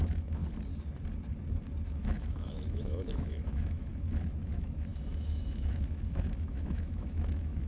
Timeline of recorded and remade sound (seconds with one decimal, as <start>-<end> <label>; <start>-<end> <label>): 0.0-0.4 remade; 0.4-1.9 recorded; 1.9-3.9 remade; 3.9-4.5 recorded; 4.5-7.7 remade